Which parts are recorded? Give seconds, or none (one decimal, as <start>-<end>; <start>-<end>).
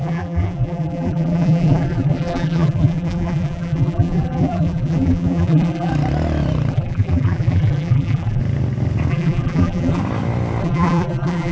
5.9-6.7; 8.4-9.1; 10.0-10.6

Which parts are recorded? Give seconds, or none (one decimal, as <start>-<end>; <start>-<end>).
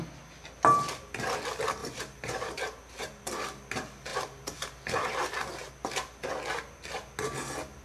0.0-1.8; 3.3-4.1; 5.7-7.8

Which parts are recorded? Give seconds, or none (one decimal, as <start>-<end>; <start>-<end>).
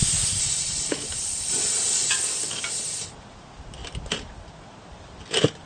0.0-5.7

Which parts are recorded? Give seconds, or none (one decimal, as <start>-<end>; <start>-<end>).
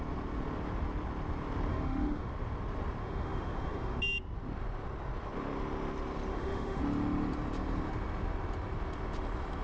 0.0-1.7; 2.3-3.0; 4.0-6.3; 6.8-9.6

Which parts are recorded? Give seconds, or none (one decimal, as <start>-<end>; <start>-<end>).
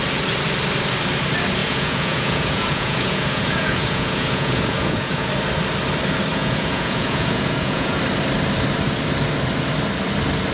0.0-1.6; 5.3-6.3; 8.0-10.5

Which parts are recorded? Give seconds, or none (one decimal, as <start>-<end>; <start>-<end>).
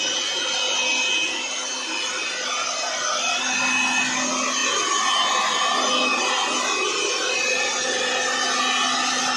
0.0-9.4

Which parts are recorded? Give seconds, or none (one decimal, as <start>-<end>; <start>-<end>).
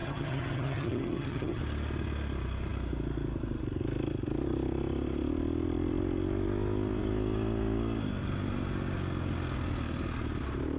1.6-10.8